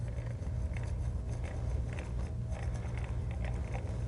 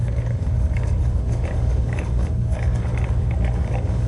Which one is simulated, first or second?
second